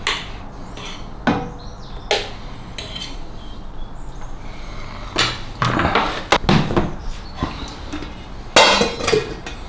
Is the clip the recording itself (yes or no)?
yes